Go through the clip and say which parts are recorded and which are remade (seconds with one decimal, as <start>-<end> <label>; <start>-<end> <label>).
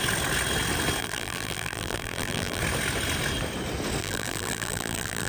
0.0-1.0 recorded; 1.0-2.6 remade; 2.6-4.0 recorded; 4.0-5.3 remade